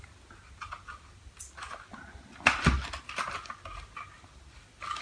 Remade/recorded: recorded